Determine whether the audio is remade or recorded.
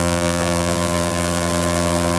remade